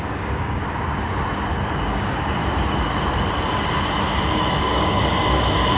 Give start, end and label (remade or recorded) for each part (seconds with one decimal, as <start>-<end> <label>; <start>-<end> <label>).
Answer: 0.0-0.6 remade; 0.6-1.8 recorded; 1.8-2.4 remade; 2.4-4.6 recorded; 4.6-5.8 remade